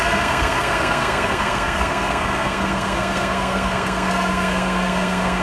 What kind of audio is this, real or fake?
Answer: fake